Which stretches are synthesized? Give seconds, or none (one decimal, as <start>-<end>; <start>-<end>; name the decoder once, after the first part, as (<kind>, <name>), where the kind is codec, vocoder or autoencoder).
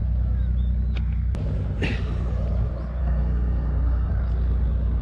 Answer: 3.0-4.1 (codec, SNAC)